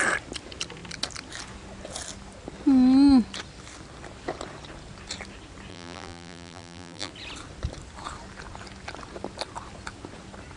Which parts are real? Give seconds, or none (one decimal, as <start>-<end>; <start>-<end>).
0.0-5.7; 7.1-10.6